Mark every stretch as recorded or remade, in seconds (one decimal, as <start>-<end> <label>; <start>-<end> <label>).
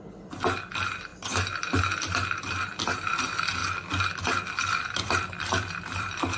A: 0.0-4.6 recorded; 4.6-6.4 remade